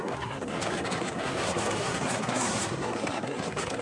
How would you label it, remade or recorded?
remade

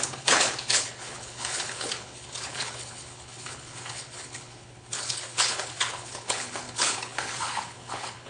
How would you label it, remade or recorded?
remade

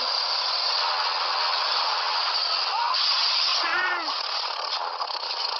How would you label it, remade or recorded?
remade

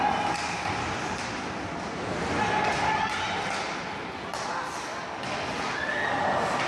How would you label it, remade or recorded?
recorded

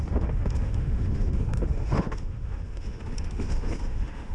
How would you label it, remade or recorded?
remade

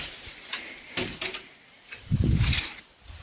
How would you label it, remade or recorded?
remade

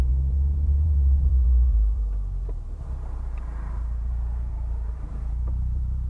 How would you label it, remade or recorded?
remade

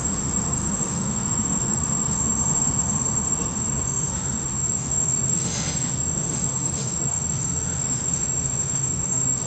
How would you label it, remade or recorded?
remade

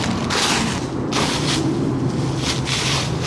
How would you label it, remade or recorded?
recorded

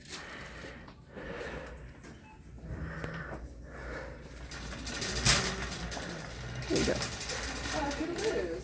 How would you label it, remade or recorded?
recorded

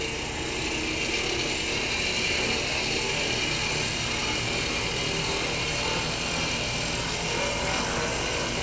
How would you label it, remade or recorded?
recorded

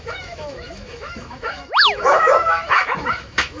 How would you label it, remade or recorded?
remade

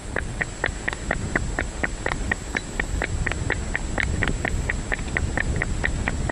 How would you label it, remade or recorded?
recorded